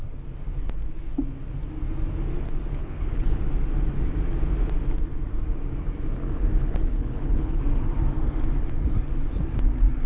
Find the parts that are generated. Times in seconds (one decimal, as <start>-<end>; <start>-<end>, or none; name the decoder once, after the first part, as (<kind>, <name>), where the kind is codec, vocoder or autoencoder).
2.8-3.4 (codec, HILCodec); 6.6-7.6

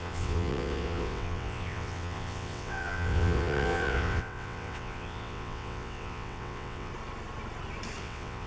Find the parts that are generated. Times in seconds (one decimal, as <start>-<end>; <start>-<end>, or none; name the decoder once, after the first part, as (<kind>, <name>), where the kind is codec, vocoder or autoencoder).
0.0-6.9 (vocoder, WaveNeXt); 8.0-8.5

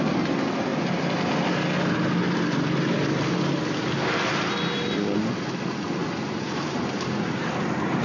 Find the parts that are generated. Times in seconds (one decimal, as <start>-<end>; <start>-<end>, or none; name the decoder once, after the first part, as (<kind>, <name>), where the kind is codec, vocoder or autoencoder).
none

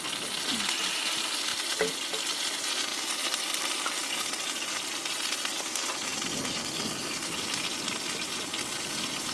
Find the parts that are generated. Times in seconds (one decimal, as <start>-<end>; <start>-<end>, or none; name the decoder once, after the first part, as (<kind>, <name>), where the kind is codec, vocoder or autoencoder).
none

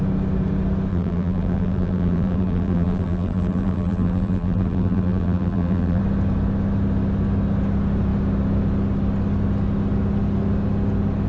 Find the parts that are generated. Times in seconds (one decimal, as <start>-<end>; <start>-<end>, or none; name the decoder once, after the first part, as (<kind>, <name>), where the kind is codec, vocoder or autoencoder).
0.9-6.0 (vocoder, BigVGAN v2)